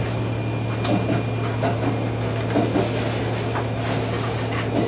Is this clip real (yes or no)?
yes